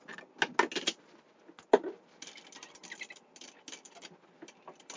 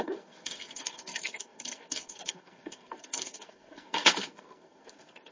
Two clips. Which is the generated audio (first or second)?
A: second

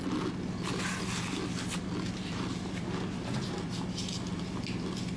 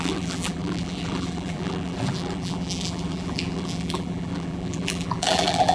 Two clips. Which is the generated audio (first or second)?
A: second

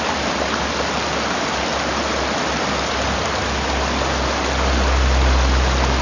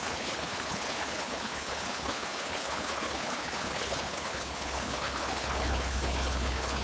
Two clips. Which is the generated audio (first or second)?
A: second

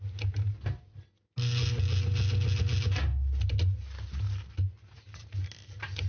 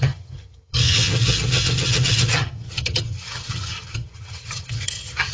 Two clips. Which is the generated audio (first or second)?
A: second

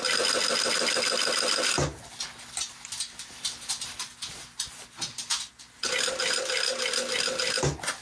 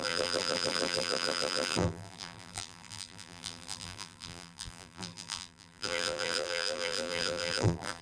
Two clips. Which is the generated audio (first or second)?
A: second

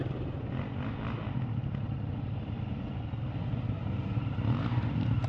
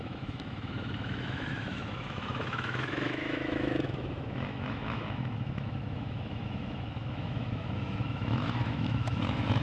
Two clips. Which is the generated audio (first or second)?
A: second